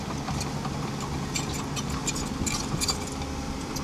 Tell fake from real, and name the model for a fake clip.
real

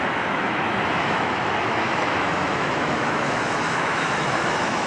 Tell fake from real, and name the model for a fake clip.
fake, autoencoder, DAC-VAE